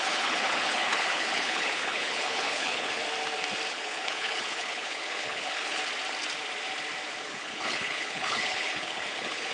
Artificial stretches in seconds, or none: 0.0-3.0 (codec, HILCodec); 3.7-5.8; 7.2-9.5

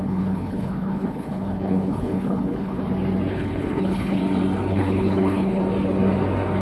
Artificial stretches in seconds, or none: 0.0-2.8 (codec, HILCodec); 3.3-4.2; 4.7-5.6

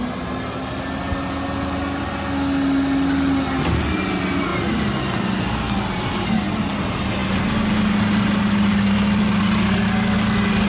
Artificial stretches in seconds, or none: none

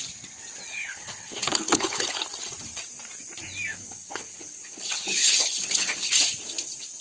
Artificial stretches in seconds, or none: 0.7-2.2 (codec, HILCodec); 3.7-6.2

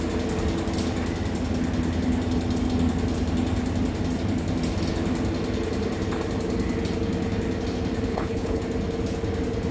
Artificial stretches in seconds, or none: 8.1-8.6 (codec, HILCodec)

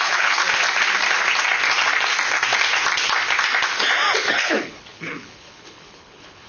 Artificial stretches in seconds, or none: 0.0-0.4 (codec, HILCodec); 4.3-6.5